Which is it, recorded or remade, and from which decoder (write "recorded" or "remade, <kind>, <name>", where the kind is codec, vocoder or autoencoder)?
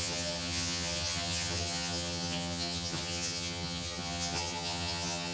remade, vocoder, HiFi-GAN